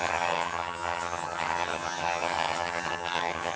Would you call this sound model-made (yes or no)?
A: yes